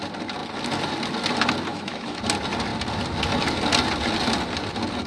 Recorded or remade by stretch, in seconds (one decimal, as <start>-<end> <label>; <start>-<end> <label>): 0.0-1.7 recorded; 1.7-2.2 remade; 2.2-5.1 recorded